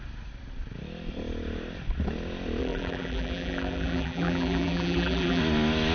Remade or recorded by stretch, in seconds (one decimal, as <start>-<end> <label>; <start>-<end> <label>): 0.0-2.6 recorded; 2.6-5.4 remade; 5.4-5.9 recorded